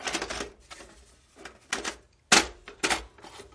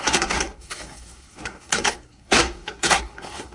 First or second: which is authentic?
first